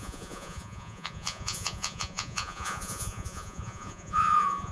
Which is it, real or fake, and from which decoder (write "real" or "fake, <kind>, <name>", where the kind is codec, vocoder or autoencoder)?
fake, vocoder, Vocos